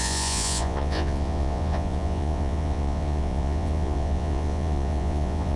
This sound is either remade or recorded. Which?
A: remade